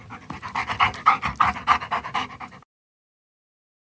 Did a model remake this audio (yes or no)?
no